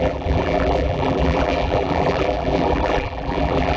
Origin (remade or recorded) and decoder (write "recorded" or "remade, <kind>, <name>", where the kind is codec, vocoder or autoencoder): remade, vocoder, BigVGAN v2